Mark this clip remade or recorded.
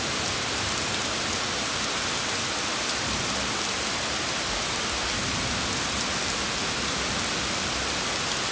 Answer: recorded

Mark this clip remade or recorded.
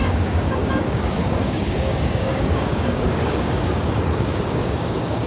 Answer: remade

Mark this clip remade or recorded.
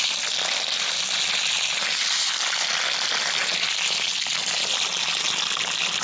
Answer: recorded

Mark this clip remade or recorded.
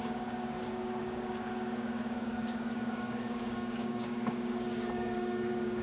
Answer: remade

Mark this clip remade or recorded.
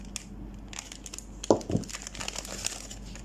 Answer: recorded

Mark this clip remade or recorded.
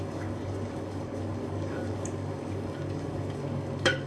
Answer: remade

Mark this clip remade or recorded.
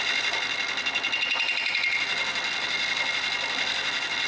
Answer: recorded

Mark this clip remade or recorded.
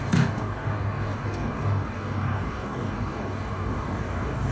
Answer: remade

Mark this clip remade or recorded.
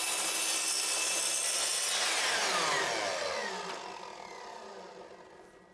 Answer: recorded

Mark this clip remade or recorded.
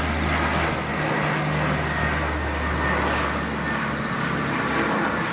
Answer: recorded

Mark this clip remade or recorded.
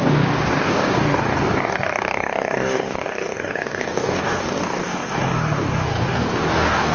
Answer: remade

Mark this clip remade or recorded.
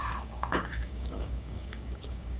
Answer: remade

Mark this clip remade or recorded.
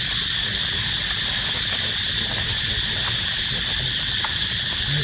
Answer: recorded